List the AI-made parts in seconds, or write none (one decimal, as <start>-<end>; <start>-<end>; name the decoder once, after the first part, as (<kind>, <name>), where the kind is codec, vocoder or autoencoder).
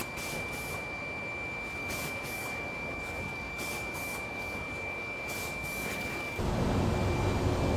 1.8-6.5 (codec, DAC)